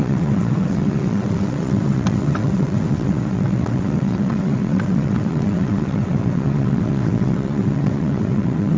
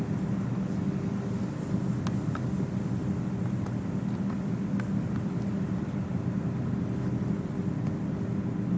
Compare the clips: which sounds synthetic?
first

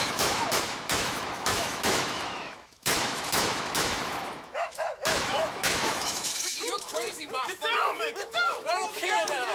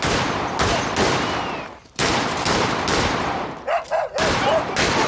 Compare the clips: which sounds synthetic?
first